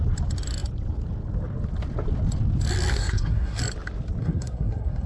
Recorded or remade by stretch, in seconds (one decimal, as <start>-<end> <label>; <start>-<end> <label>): 0.0-2.9 recorded; 2.9-3.6 remade; 3.6-4.2 recorded; 4.2-5.1 remade